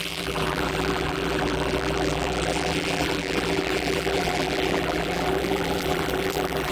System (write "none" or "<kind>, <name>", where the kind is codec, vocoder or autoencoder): vocoder, BigVGAN v2